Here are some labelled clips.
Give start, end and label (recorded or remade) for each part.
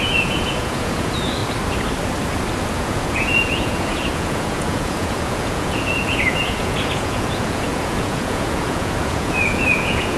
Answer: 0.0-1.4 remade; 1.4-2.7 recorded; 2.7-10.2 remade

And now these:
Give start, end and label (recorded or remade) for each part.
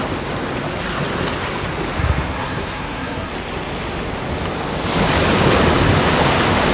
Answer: 0.0-2.0 recorded; 2.0-3.3 remade; 3.3-6.7 recorded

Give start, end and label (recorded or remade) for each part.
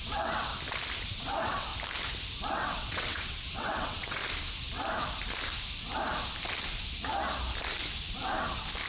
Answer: 0.0-0.5 remade; 0.5-1.1 recorded; 1.1-1.7 remade; 1.7-2.5 recorded; 2.5-4.2 remade; 4.2-8.9 recorded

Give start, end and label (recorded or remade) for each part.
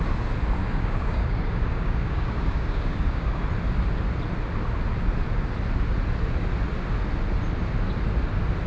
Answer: 0.0-0.6 recorded; 0.6-3.4 remade; 3.4-8.7 recorded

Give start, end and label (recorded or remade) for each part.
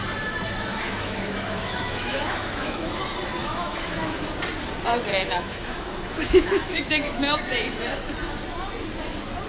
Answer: 0.0-0.7 recorded; 0.7-3.0 remade; 3.0-3.4 recorded; 3.4-4.2 remade; 4.2-5.1 recorded; 5.1-7.4 remade; 7.4-9.5 recorded